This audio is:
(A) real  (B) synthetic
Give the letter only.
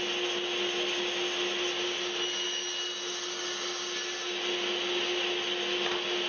A